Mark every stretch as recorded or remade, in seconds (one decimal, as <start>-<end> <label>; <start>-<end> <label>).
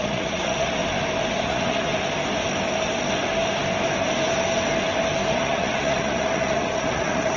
0.0-0.8 remade; 0.8-1.3 recorded; 1.3-1.9 remade; 1.9-5.3 recorded; 5.3-7.4 remade